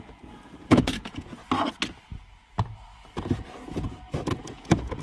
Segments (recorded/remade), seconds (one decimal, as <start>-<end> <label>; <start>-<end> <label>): 0.0-1.4 remade; 1.4-4.4 recorded; 4.4-5.0 remade